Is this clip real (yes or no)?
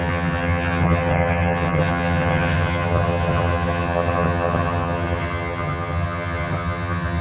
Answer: no